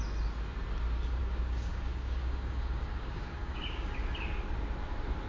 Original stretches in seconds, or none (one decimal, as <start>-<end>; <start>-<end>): 0.0-1.2; 3.9-5.3